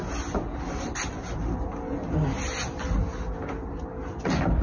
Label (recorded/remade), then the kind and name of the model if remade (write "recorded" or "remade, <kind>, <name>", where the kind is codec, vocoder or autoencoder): recorded